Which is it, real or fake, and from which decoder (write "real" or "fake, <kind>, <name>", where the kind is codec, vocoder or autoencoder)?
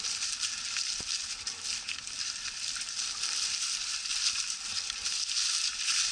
real